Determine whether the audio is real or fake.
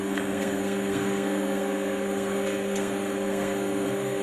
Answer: fake